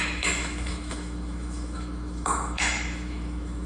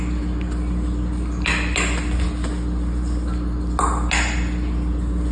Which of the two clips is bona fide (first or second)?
second